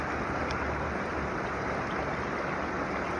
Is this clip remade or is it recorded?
recorded